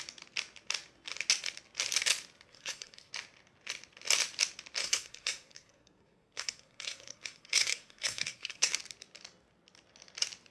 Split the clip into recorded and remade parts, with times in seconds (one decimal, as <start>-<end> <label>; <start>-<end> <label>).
0.0-2.5 recorded; 2.5-3.1 remade; 3.1-4.8 recorded; 4.8-8.8 remade; 8.8-10.5 recorded

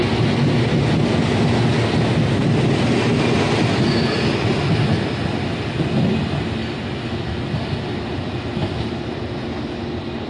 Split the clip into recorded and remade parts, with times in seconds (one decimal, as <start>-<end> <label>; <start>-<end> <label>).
0.0-10.3 recorded

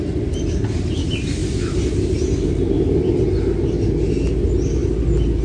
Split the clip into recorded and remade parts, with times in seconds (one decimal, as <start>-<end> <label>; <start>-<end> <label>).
0.0-5.4 recorded

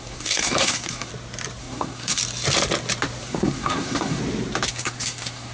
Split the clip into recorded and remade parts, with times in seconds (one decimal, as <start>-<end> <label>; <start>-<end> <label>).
0.0-1.1 remade; 1.1-1.6 recorded; 1.6-2.2 remade; 2.2-3.2 recorded; 3.2-4.2 remade; 4.2-4.7 recorded; 4.7-5.5 remade

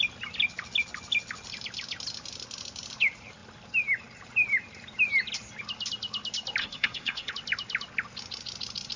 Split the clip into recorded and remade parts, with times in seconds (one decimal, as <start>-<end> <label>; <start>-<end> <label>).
0.0-6.6 recorded; 6.6-7.3 remade; 7.3-9.0 recorded

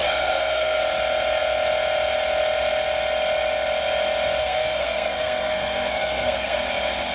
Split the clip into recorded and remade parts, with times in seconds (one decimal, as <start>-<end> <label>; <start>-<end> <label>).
0.0-0.8 remade; 0.8-4.4 recorded; 4.4-6.6 remade; 6.6-7.1 recorded

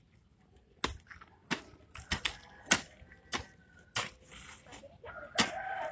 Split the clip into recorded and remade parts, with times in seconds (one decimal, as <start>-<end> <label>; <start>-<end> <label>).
0.0-5.9 recorded

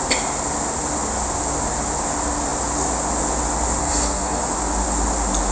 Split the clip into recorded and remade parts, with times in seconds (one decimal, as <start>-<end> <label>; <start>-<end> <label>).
0.0-3.8 recorded; 3.8-4.4 remade; 4.4-5.5 recorded